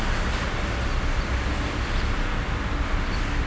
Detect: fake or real real